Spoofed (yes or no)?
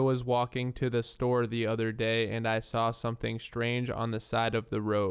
no